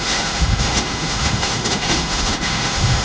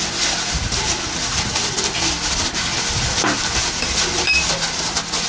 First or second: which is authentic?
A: second